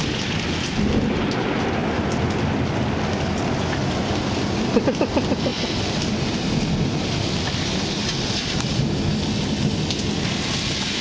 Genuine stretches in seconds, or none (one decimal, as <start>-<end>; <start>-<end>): 0.0-11.0

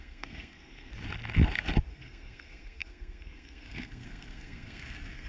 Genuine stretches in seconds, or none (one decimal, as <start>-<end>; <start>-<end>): 0.9-1.9

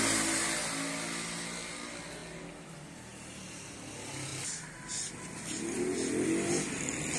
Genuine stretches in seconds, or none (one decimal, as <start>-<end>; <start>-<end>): 0.0-7.2

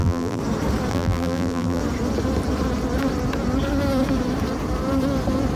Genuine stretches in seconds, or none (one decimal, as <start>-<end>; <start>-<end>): 0.4-0.9; 1.8-5.6

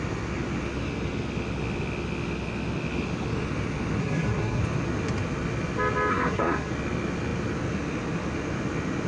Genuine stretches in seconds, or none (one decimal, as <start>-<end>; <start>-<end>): 0.0-4.0; 4.6-6.1; 6.7-9.1

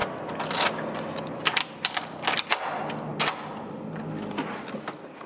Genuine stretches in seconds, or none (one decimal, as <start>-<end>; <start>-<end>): 0.0-5.3